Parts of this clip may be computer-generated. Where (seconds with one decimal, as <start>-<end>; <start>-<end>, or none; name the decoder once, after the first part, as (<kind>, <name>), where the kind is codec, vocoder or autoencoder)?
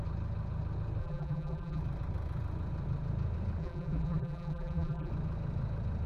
1.0-1.8 (vocoder, BigVGAN v2); 3.6-5.1